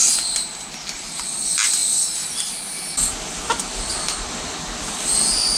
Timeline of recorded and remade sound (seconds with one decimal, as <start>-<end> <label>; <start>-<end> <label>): 0.0-5.6 recorded